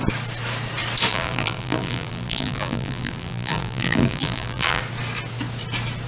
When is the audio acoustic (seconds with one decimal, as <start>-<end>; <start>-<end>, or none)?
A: 0.0-1.1; 4.8-6.1